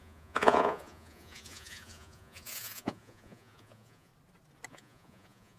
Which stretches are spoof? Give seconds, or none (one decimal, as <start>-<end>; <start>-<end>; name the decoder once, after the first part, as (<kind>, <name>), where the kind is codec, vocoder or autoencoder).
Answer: 0.0-4.1 (vocoder, Vocos); 4.7-5.6